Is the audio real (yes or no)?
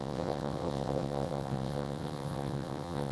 no